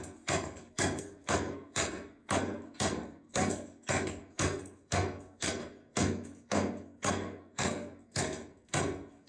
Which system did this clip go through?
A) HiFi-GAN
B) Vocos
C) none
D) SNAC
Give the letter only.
D